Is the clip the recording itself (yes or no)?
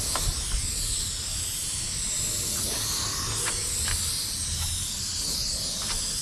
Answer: yes